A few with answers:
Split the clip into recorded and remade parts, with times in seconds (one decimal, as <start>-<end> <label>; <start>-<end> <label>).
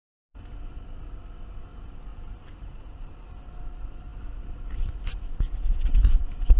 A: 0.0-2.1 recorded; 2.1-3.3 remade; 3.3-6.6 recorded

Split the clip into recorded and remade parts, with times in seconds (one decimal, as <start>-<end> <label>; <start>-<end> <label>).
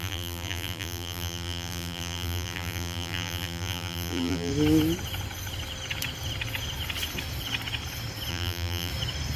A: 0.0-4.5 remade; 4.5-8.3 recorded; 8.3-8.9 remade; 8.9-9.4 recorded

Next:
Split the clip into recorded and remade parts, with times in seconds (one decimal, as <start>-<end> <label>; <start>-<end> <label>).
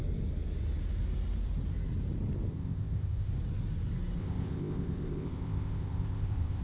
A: 0.0-2.5 recorded; 2.5-3.3 remade; 3.3-4.2 recorded; 4.2-6.6 remade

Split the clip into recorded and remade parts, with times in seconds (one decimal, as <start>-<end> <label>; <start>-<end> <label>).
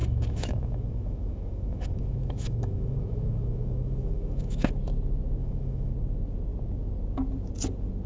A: 0.0-4.7 remade; 4.7-5.4 recorded; 5.4-5.9 remade; 5.9-8.1 recorded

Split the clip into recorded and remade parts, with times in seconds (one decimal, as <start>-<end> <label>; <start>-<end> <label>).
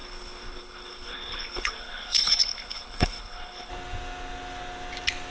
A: 0.0-3.7 remade; 3.7-5.3 recorded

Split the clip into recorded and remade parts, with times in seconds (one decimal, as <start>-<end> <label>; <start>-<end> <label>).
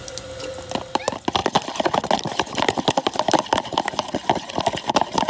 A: 0.0-5.3 recorded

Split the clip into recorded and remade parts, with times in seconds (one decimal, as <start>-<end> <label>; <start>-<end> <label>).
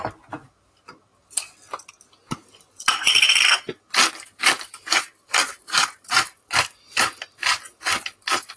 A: 0.0-8.6 recorded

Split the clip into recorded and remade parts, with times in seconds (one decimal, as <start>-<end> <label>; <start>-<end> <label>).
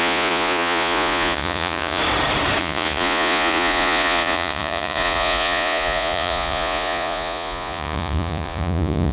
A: 0.0-2.0 remade; 2.0-2.6 recorded; 2.6-9.1 remade